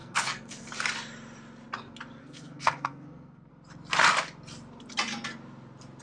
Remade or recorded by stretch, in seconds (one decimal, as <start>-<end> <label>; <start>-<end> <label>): 0.0-0.7 remade; 0.7-2.2 recorded; 2.2-3.5 remade; 3.5-6.0 recorded